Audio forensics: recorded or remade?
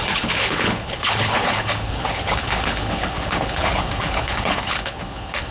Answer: remade